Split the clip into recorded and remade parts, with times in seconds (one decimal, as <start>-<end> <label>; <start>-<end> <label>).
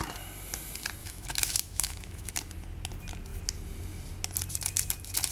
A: 0.0-1.0 recorded; 1.0-2.3 remade; 2.3-5.3 recorded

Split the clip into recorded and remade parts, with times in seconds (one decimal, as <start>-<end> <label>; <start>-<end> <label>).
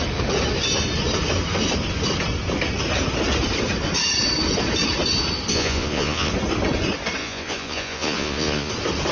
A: 0.0-5.5 recorded; 5.5-6.3 remade; 6.3-7.2 recorded; 7.2-8.7 remade; 8.7-9.1 recorded